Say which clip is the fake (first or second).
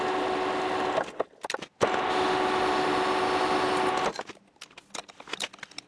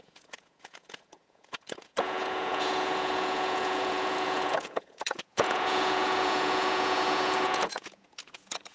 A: second